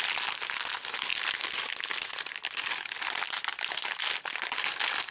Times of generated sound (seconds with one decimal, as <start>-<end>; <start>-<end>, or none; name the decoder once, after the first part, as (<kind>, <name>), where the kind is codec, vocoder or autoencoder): none